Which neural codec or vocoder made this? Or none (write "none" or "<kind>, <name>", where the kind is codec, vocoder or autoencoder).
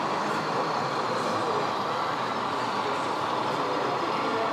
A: none